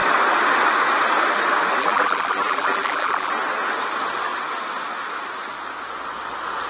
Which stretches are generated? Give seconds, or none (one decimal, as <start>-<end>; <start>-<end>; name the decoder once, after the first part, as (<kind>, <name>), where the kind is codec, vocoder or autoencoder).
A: 1.8-3.3 (vocoder, BigVGAN v2)